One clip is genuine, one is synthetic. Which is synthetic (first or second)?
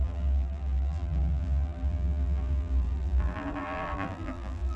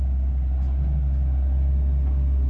first